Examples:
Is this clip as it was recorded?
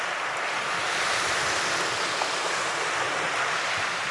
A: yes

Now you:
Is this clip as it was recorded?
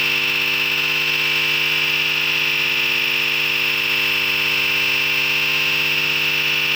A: no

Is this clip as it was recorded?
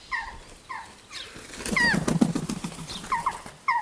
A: yes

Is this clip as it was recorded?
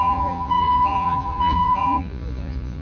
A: no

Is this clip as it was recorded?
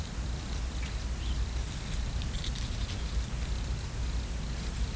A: yes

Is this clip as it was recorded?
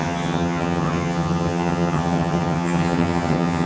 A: no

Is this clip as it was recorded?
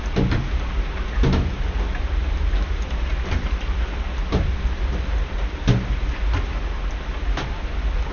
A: yes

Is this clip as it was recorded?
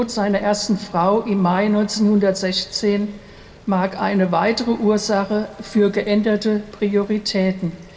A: yes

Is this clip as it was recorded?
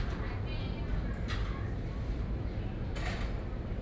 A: yes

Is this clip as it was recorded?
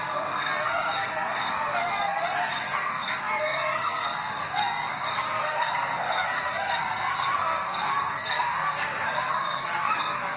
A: no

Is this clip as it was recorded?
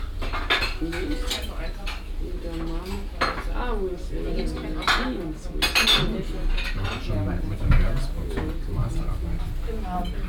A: yes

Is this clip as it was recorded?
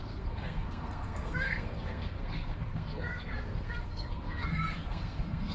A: no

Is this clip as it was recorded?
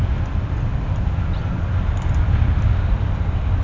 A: yes